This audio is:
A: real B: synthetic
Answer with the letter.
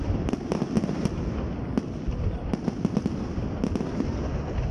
A